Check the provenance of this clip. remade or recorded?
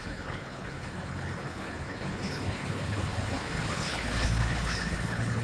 remade